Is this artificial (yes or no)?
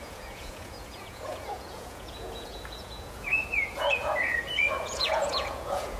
yes